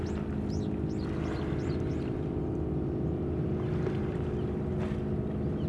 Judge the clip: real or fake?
real